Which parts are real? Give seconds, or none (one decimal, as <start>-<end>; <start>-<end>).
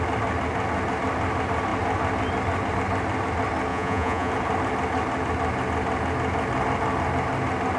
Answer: 0.0-3.7; 4.3-7.8